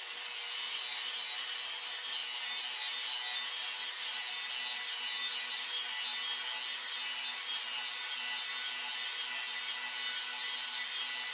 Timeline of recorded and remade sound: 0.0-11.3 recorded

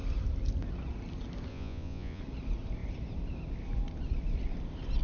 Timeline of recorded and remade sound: 0.0-1.5 recorded; 1.5-2.2 remade; 2.2-5.0 recorded

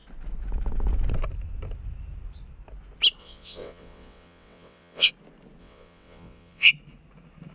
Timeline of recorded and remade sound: 0.0-3.2 recorded; 3.2-5.1 remade; 5.1-5.6 recorded; 5.6-6.7 remade; 6.7-7.5 recorded